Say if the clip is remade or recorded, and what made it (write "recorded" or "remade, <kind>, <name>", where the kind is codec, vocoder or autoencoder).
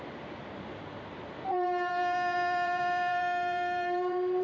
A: remade, vocoder, BigVGAN v2